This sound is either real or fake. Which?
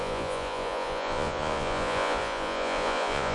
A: fake